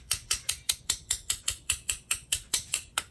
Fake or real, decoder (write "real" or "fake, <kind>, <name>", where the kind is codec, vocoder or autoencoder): fake, vocoder, Vocos